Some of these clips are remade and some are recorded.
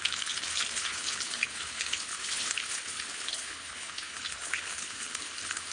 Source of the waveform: remade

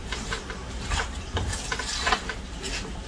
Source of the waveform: recorded